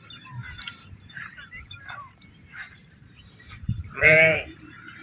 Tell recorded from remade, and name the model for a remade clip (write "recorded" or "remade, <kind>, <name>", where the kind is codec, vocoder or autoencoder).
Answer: remade, vocoder, BigVGAN v2